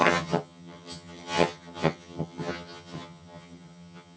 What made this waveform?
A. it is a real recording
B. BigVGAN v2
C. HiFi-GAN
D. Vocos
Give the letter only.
C